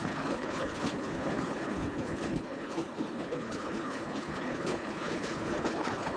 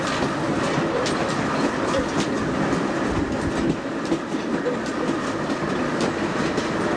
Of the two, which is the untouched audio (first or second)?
second